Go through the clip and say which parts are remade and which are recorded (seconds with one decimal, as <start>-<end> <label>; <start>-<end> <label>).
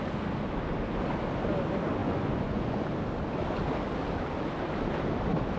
0.0-2.0 recorded; 2.0-2.9 remade; 2.9-5.6 recorded